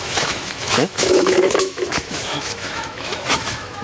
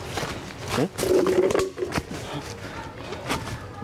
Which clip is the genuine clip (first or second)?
second